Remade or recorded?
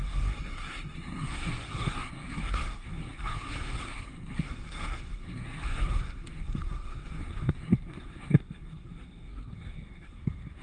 remade